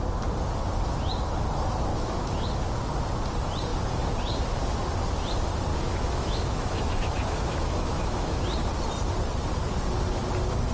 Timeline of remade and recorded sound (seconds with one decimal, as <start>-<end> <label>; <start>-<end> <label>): 0.0-1.9 recorded; 1.9-2.6 remade; 2.6-5.7 recorded; 5.7-8.4 remade; 8.4-10.7 recorded

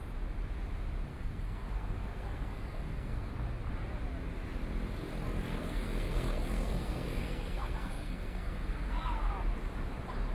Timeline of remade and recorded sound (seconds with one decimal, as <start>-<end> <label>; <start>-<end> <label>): 0.0-1.1 recorded; 1.1-3.3 remade; 3.3-5.5 recorded; 5.5-9.3 remade; 9.3-10.3 recorded

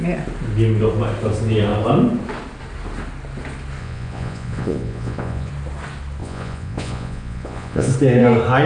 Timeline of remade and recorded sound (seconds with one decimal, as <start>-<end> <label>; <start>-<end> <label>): 0.0-3.8 recorded; 3.8-5.5 remade; 5.5-6.2 recorded; 6.2-7.9 remade; 7.9-8.7 recorded

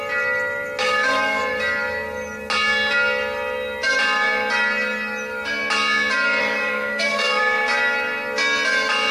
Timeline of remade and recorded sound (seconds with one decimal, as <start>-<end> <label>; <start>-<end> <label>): 0.0-0.8 recorded; 0.8-1.4 remade; 1.4-6.4 recorded; 6.4-7.4 remade; 7.4-9.1 recorded

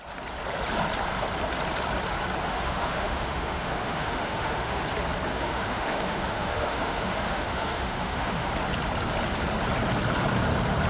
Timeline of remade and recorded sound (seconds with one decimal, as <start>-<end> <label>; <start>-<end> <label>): 0.0-2.5 recorded; 2.5-4.8 remade; 4.8-5.3 recorded; 5.3-8.5 remade; 8.5-10.9 recorded

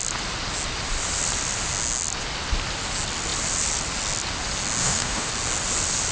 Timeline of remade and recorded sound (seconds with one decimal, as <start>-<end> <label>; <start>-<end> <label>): 0.0-4.8 recorded; 4.8-5.3 remade; 5.3-6.1 recorded

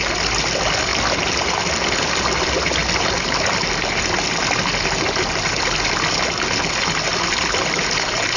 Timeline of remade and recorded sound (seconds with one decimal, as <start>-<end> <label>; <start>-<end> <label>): 0.0-8.4 recorded